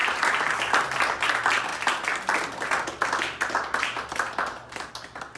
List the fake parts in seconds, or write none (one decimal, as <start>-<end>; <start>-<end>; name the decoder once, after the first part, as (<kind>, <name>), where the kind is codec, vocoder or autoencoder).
none